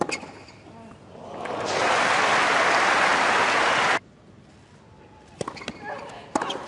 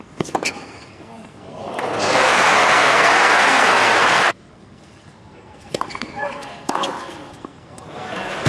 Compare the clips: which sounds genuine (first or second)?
first